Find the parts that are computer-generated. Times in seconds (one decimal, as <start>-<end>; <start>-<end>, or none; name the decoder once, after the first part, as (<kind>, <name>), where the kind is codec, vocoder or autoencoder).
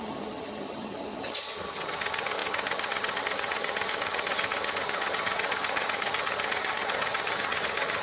0.0-8.0 (vocoder, HiFi-GAN)